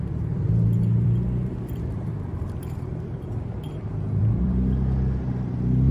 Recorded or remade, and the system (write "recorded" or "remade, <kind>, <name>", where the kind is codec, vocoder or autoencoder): remade, vocoder, BigVGAN v2